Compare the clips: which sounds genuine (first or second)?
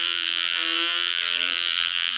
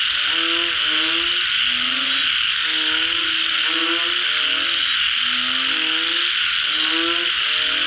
second